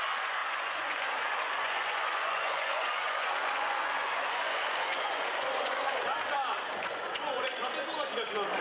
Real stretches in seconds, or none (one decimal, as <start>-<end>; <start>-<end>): 6.1-6.8; 7.6-8.6